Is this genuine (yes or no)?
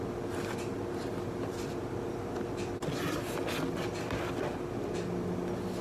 yes